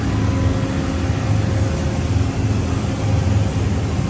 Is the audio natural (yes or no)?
yes